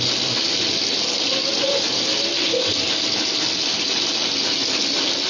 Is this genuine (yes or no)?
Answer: yes